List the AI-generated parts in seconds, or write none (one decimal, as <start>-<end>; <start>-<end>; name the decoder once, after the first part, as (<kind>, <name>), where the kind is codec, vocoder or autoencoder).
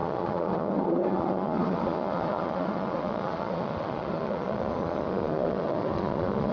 0.0-6.5 (vocoder, Vocos)